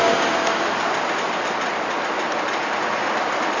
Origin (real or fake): real